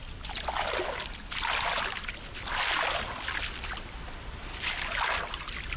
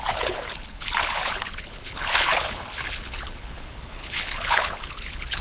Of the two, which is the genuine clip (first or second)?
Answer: first